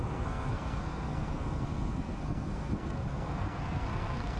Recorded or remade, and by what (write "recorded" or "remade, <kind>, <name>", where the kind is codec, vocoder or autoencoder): remade, codec, SNAC